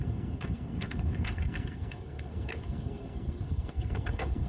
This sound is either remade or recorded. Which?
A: remade